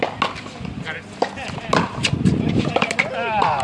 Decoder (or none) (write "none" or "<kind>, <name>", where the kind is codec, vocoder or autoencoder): none